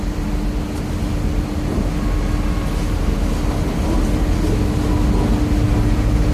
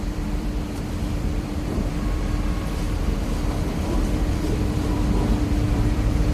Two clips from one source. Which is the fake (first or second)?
second